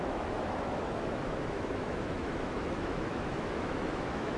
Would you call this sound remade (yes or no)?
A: yes